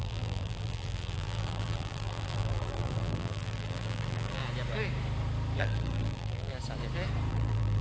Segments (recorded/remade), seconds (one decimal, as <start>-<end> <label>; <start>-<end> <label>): 0.0-4.4 remade; 4.4-5.6 recorded; 5.6-6.5 remade; 6.5-7.3 recorded; 7.3-7.8 remade